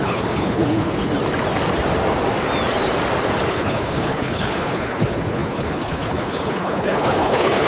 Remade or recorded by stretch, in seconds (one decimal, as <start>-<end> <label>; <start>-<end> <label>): 0.0-1.1 remade; 1.1-3.5 recorded; 3.5-7.7 remade